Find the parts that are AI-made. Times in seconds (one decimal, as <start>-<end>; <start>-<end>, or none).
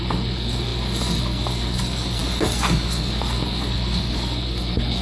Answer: 0.0-5.0